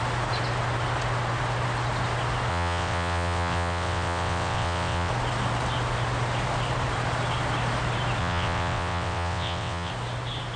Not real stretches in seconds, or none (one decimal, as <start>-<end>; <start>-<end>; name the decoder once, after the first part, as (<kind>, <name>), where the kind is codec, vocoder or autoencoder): 2.5-5.1 (vocoder, WaveNeXt); 8.2-9.9